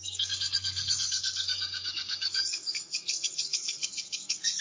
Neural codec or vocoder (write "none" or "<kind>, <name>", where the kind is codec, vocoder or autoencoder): codec, SNAC